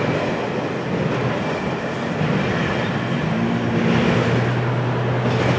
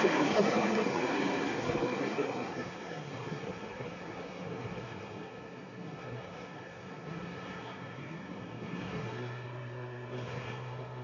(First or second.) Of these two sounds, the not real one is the second